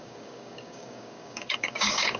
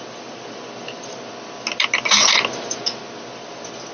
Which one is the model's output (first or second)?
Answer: first